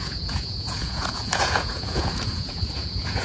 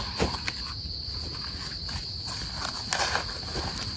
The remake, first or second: first